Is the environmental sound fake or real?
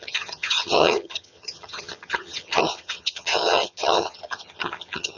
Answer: fake